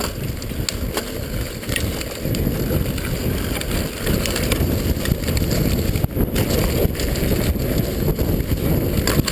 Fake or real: real